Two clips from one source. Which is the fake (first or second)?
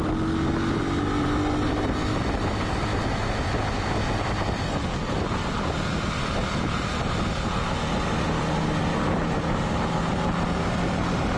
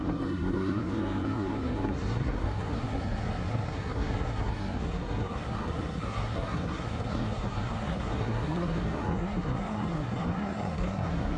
second